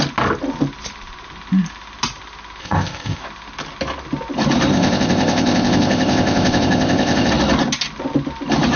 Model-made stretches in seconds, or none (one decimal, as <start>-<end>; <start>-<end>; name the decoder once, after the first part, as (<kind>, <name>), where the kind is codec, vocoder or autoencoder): 2.6-3.2 (codec, ZipCodec); 4.7-7.3